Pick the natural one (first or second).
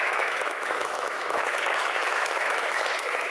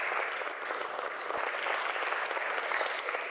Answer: second